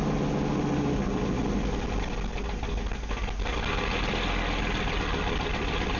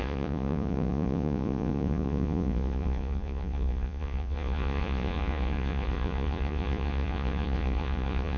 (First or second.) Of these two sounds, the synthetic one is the second